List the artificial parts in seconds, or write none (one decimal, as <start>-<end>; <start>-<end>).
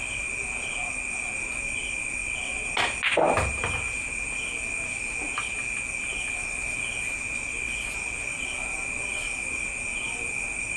none